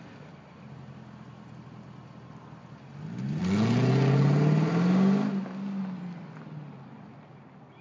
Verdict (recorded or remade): recorded